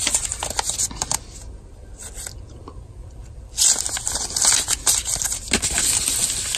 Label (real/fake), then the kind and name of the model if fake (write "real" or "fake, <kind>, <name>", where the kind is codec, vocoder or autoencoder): real